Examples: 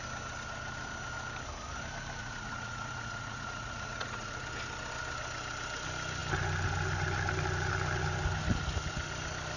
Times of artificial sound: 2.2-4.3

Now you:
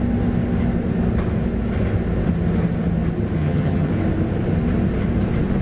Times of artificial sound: 3.4-3.9

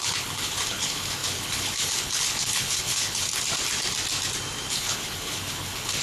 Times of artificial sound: 0.0-3.3; 4.7-6.0

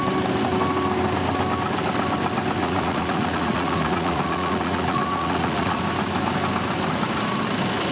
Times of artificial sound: 2.6-5.8

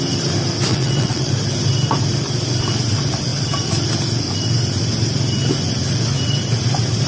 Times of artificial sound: 0.7-1.3

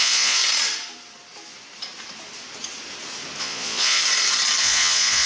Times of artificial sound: 0.0-0.4; 3.4-4.0; 4.6-5.3